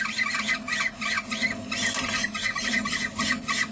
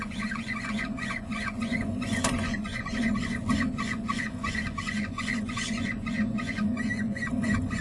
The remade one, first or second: second